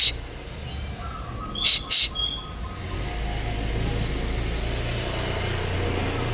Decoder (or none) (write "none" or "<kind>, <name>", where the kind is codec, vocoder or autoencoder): none